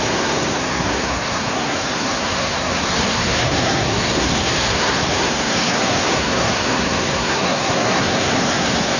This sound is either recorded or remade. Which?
remade